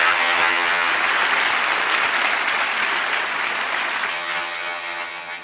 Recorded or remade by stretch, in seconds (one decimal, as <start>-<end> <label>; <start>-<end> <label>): 0.0-0.9 remade; 0.9-4.1 recorded; 4.1-5.4 remade